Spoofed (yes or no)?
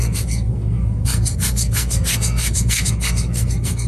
yes